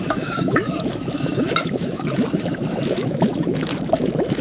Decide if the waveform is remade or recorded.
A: remade